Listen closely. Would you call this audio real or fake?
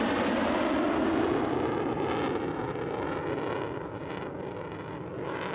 real